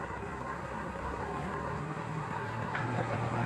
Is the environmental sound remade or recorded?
remade